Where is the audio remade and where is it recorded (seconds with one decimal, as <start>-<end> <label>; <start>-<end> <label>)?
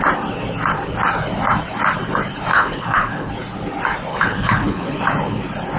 0.0-2.5 recorded; 2.5-3.3 remade; 3.3-4.1 recorded; 4.1-5.0 remade; 5.0-5.8 recorded